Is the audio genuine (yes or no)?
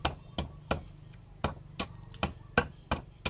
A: yes